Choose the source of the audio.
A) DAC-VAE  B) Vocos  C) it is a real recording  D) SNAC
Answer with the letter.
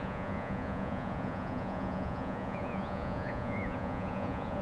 B